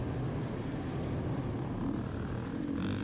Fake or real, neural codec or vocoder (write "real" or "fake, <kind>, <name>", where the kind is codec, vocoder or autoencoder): real